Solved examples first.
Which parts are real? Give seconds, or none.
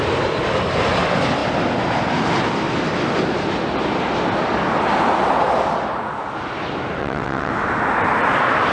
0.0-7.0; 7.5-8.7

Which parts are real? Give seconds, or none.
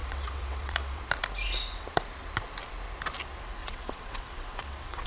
1.0-3.6